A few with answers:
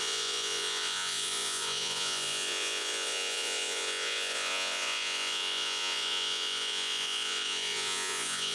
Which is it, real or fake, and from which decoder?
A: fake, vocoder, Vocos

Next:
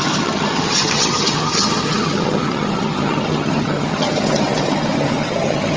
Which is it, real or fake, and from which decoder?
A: fake, vocoder, HiFi-GAN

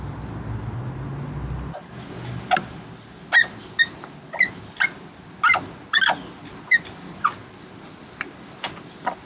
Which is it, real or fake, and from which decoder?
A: real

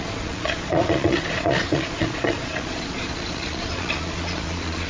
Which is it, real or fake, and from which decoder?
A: fake, vocoder, Vocos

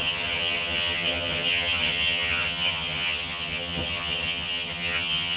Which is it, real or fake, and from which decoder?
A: fake, vocoder, HiFi-GAN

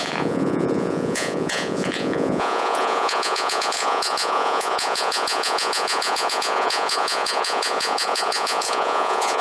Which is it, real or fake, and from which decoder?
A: fake, vocoder, Vocos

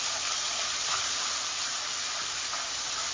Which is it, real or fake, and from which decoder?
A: real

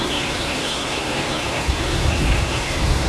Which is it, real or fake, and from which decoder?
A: fake, codec, SNAC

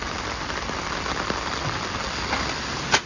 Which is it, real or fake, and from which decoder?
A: real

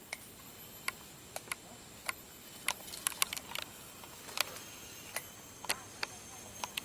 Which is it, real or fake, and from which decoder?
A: real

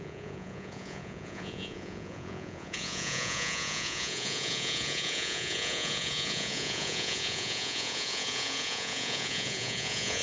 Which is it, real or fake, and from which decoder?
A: fake, vocoder, Vocos